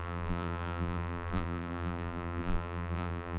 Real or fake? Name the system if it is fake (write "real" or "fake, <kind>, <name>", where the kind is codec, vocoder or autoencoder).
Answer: fake, vocoder, BigVGAN v2